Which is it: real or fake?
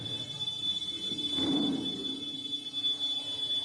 real